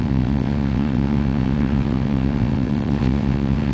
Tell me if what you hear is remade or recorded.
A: remade